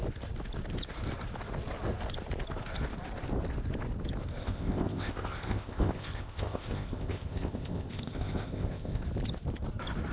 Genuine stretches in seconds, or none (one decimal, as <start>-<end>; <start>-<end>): 0.0-4.4; 9.0-10.1